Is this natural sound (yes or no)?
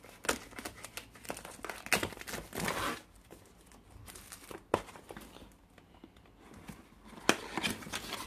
yes